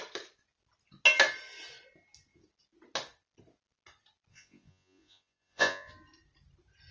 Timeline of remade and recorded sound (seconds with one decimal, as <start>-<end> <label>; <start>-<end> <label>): 0.0-4.3 recorded; 4.3-5.9 remade; 5.9-6.9 recorded

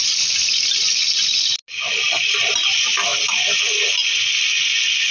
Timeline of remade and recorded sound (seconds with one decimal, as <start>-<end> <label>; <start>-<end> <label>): 0.0-5.1 recorded